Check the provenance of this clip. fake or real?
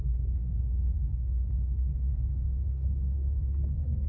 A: fake